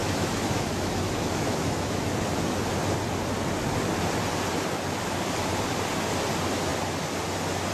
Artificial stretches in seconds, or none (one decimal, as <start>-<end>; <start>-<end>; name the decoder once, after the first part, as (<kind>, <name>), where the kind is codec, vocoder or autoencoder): 0.0-2.1 (autoencoder, DAC-VAE)